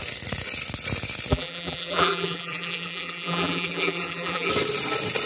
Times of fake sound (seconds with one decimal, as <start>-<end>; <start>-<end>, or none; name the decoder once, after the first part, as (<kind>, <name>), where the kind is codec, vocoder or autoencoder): 1.3-4.5 (vocoder, BigVGAN v2)